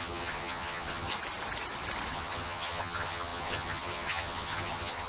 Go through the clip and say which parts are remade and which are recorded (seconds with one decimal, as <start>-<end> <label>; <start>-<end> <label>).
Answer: 0.0-1.1 remade; 1.1-2.1 recorded; 2.1-5.1 remade